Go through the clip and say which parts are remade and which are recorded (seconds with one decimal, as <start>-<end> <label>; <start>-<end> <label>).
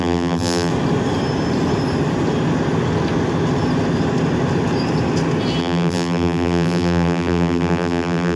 0.0-0.7 remade; 0.7-5.6 recorded; 5.6-8.4 remade